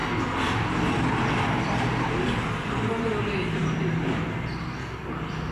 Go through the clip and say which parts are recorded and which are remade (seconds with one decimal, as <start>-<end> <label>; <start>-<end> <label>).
0.0-2.7 remade; 2.7-5.5 recorded